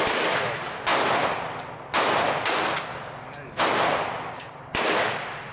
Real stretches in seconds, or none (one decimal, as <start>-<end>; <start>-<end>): 0.0-5.5